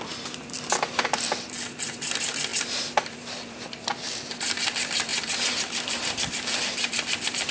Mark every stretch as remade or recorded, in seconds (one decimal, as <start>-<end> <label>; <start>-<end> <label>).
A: 0.0-7.5 remade